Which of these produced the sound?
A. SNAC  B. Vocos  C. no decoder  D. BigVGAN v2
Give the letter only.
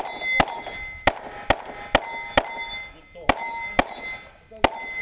C